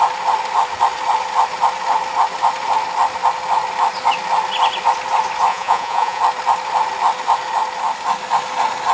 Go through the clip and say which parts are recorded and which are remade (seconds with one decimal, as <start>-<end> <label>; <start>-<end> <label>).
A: 0.0-5.5 recorded; 5.5-6.2 remade; 6.2-8.9 recorded